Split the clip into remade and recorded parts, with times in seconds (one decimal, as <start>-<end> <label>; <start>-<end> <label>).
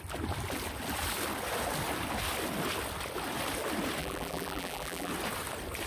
0.0-4.0 recorded; 4.0-5.1 remade; 5.1-5.9 recorded